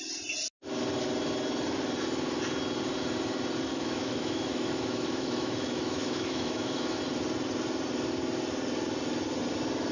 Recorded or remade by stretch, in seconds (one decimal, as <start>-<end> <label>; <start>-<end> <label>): 0.0-3.7 recorded; 3.7-7.0 remade; 7.0-9.9 recorded